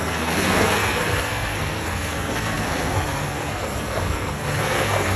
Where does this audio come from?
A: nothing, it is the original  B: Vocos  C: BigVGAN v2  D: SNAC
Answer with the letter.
D